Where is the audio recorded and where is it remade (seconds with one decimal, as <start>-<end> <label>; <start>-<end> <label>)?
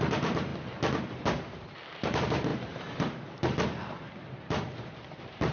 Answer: 0.0-0.5 remade; 0.5-1.9 recorded; 1.9-2.5 remade; 2.5-4.2 recorded; 4.2-5.5 remade